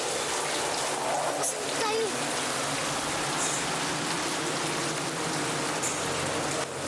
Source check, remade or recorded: recorded